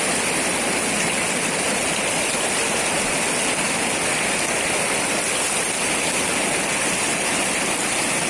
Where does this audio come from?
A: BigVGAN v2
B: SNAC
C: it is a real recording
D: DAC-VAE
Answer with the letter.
C